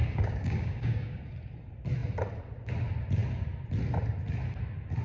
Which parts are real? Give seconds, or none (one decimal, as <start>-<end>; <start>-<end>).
1.2-5.0